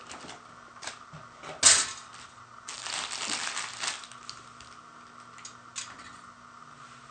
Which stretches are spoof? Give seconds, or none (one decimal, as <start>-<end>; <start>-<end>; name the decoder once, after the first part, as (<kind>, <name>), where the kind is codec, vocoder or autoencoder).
none